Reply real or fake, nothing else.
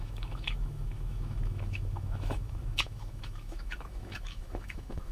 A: fake